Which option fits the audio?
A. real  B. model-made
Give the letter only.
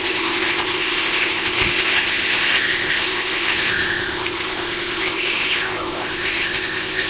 B